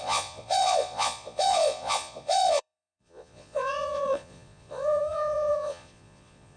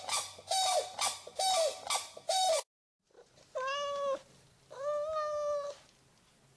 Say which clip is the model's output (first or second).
first